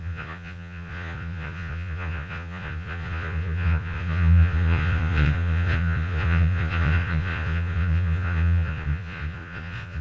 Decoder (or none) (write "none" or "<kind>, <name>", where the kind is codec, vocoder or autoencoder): vocoder, Vocos